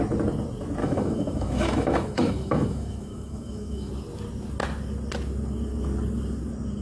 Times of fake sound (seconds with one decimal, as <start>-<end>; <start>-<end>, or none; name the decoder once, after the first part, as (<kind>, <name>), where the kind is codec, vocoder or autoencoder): 0.8-3.9 (autoencoder, DAC-VAE)